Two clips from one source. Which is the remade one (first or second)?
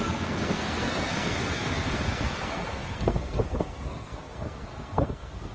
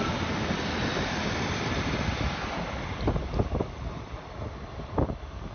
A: first